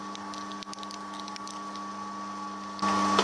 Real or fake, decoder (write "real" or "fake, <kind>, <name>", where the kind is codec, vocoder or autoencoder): real